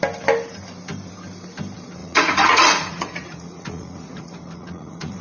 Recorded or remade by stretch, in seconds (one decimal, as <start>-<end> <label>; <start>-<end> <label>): 0.0-2.0 recorded; 2.0-5.2 remade